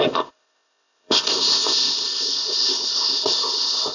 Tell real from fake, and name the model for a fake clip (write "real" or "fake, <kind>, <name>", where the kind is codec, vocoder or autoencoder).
fake, codec, ZipCodec